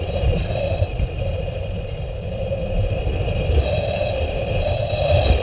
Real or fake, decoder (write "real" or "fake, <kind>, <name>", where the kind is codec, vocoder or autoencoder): fake, vocoder, BigVGAN v2